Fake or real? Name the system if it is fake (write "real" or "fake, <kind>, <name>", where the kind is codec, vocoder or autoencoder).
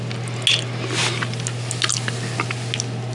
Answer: real